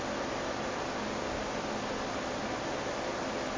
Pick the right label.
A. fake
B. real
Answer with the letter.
B